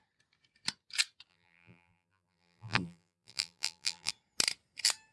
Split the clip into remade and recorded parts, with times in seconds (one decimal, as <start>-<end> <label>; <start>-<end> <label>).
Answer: 0.0-1.3 recorded; 1.3-4.1 remade; 4.1-5.1 recorded